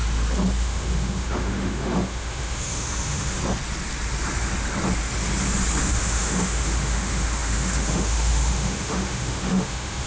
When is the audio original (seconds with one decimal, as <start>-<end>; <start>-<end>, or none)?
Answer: 0.0-0.6; 3.4-5.8

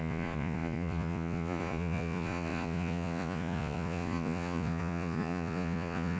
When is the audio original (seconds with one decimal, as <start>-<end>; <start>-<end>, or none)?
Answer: none